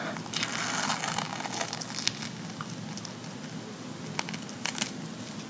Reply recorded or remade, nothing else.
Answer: recorded